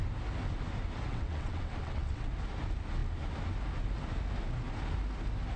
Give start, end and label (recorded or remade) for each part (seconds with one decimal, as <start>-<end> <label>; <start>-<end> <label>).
0.0-1.1 recorded; 1.1-2.3 remade; 2.3-5.6 recorded